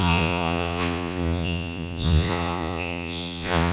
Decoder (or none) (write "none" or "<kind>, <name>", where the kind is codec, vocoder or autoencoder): vocoder, Vocos